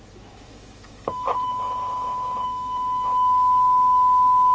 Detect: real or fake fake